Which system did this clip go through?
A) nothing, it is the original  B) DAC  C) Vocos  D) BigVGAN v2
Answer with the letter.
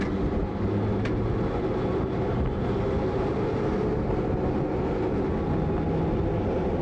A